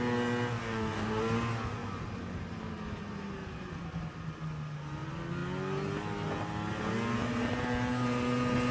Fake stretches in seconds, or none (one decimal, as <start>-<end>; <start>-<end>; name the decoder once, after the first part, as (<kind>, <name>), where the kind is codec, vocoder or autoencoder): 0.6-1.2 (codec, DAC)